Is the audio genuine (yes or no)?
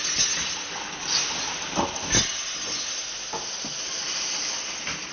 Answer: yes